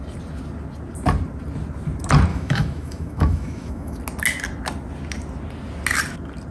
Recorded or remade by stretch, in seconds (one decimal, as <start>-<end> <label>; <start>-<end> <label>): 0.0-2.3 recorded; 2.3-4.0 remade; 4.0-6.5 recorded